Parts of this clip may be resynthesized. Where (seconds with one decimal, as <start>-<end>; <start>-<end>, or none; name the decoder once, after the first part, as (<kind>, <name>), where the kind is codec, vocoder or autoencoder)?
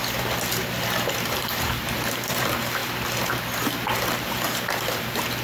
1.1-2.8 (vocoder, BigVGAN v2); 4.2-5.4